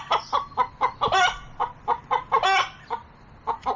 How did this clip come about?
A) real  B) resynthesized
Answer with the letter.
A